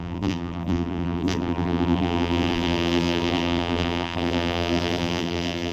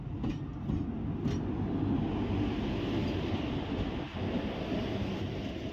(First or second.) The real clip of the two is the second